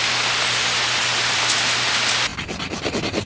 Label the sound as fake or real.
real